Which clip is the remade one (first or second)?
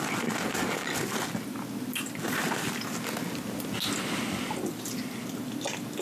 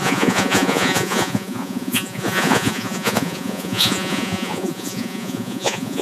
second